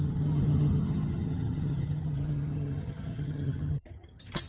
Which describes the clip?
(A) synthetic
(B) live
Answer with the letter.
A